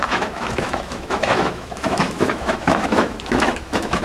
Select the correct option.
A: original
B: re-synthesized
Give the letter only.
B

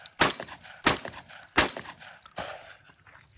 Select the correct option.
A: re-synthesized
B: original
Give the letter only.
B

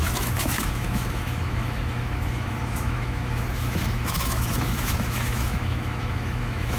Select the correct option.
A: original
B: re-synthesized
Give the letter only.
B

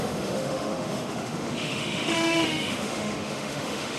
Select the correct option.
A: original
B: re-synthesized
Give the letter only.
B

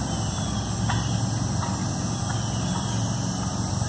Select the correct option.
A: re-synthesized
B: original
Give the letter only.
B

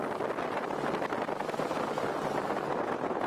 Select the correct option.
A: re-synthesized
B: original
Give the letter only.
B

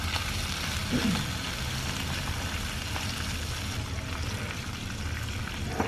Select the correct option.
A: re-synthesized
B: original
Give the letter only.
B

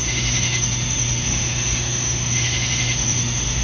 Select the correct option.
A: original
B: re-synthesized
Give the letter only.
B